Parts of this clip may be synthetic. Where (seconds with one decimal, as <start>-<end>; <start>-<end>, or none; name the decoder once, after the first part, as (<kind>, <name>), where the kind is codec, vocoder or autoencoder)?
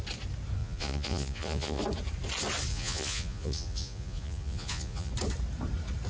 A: 0.6-1.8 (vocoder, Vocos); 2.7-5.1